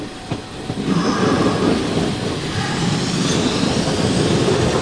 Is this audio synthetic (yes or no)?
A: no